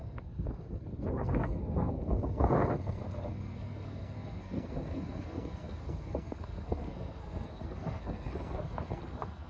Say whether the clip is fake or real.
fake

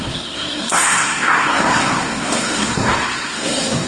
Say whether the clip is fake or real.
fake